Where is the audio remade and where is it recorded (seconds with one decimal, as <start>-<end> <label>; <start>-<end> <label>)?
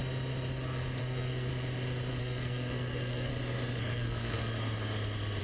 0.0-1.0 recorded; 1.0-1.5 remade; 1.5-2.2 recorded; 2.2-3.3 remade; 3.3-3.8 recorded; 3.8-4.4 remade; 4.4-5.4 recorded